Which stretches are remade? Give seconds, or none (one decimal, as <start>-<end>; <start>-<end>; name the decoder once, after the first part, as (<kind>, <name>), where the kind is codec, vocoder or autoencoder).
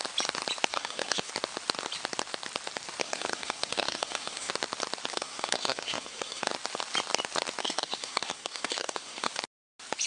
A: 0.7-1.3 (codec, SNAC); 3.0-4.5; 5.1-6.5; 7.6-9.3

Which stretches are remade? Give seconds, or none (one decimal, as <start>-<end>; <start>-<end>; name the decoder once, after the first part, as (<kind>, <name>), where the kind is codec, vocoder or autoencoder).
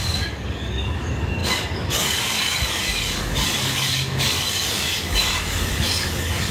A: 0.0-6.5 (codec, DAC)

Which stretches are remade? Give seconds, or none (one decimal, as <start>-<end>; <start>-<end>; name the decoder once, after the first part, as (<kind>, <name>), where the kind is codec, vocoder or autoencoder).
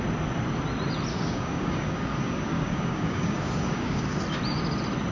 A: 1.1-4.2 (codec, DAC)